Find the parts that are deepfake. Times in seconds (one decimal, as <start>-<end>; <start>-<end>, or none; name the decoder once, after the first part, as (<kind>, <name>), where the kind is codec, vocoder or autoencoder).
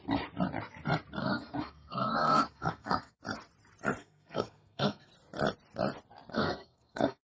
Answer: 1.2-3.2 (codec, SNAC); 4.0-5.1; 6.3-7.2